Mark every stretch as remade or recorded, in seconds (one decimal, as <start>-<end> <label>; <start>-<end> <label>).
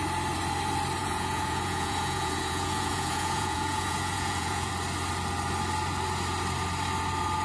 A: 0.0-1.0 recorded; 1.0-4.7 remade; 4.7-7.4 recorded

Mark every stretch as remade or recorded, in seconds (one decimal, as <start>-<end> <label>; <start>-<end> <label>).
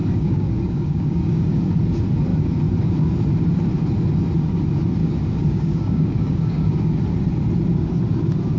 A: 0.0-1.7 remade; 1.7-5.0 recorded; 5.0-6.7 remade; 6.7-8.6 recorded